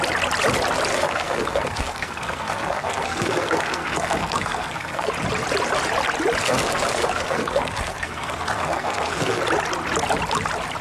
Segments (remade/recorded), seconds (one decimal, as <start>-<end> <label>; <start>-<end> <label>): 0.0-0.9 recorded; 0.9-5.1 remade; 5.1-6.4 recorded; 6.4-9.4 remade; 9.4-10.8 recorded